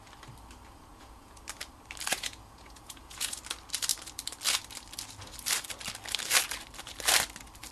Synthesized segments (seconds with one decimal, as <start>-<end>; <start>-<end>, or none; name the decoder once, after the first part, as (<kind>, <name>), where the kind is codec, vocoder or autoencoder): 0.9-1.4 (vocoder, Vocos); 2.1-3.4